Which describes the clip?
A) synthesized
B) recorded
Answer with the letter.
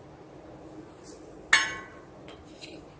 B